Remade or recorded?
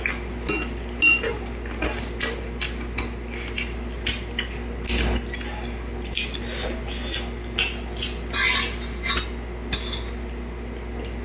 recorded